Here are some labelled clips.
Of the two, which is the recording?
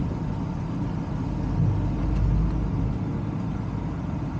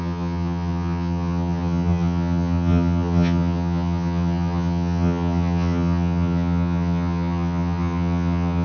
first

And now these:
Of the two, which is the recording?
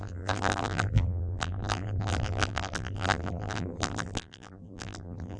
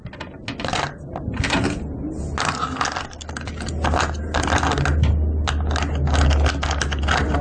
second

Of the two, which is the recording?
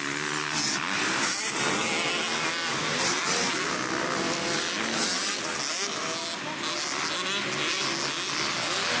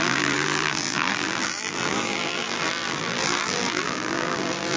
first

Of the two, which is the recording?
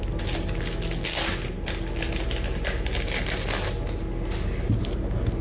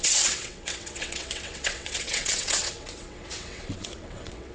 first